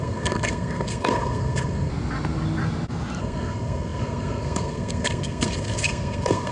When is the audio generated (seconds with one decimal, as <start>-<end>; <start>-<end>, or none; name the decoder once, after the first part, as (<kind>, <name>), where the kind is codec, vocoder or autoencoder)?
0.0-1.9 (codec, SNAC); 3.2-6.5